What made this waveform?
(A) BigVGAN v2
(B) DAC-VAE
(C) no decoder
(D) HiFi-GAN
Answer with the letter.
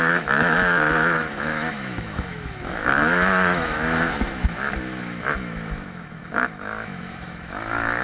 B